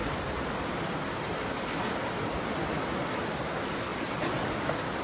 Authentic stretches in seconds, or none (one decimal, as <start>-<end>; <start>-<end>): 0.0-5.0